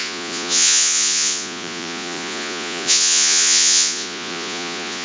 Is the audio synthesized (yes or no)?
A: yes